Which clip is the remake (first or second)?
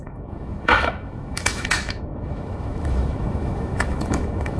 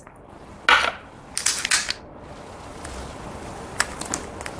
first